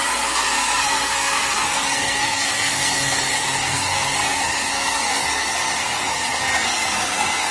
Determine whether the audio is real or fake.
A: fake